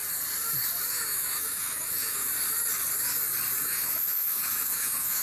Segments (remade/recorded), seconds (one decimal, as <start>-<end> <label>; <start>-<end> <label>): 0.0-0.9 recorded; 0.9-2.3 remade; 2.3-3.6 recorded; 3.6-5.2 remade